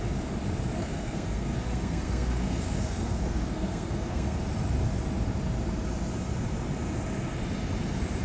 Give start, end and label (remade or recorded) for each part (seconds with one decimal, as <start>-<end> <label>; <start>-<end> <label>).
0.0-0.8 recorded; 0.8-4.4 remade; 4.4-8.2 recorded